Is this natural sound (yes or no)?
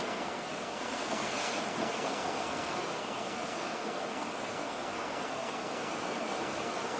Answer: no